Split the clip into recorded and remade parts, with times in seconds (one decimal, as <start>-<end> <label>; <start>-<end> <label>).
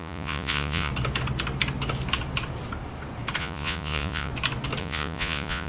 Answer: 0.0-0.9 remade; 0.9-3.4 recorded; 3.4-4.3 remade; 4.3-4.8 recorded; 4.8-5.7 remade